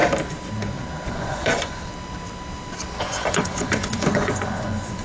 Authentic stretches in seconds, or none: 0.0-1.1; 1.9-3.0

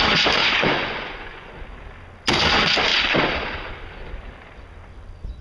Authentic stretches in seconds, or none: 0.0-0.4; 1.5-5.4